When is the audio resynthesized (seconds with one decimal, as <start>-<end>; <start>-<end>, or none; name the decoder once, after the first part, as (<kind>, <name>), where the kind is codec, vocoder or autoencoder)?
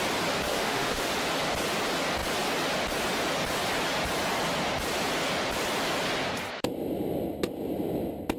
0.5-1.1 (autoencoder, DAC-VAE)